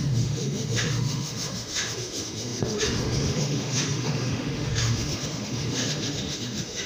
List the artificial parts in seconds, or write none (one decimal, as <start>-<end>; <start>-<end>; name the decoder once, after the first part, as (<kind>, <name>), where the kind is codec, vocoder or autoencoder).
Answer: 0.0-6.9 (autoencoder, DAC-VAE)